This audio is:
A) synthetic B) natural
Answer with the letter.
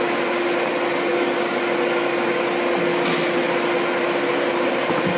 B